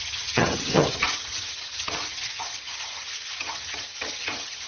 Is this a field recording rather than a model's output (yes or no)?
no